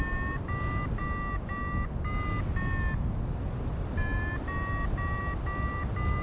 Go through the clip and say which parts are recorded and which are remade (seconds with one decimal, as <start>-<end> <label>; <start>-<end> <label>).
0.0-6.2 recorded